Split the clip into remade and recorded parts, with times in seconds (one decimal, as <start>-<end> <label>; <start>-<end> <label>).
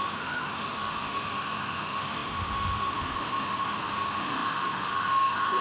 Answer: 0.0-5.6 remade